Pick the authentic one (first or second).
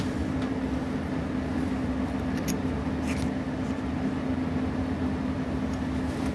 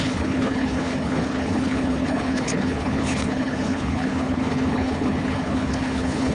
first